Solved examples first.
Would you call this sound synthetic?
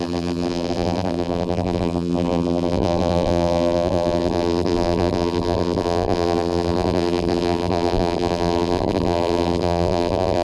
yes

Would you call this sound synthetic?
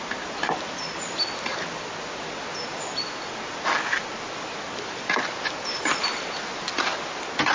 no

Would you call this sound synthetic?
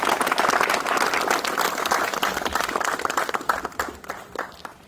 no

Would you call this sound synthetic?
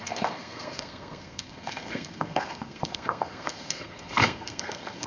yes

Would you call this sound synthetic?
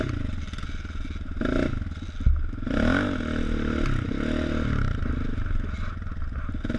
no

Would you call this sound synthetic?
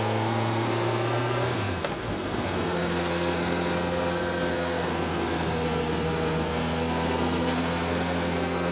yes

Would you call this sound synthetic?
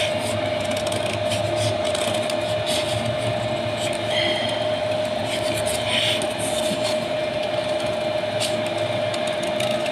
no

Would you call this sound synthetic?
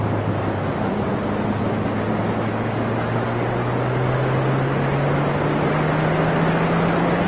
no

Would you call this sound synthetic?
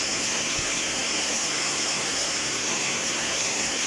yes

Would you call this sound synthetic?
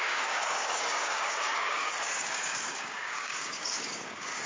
yes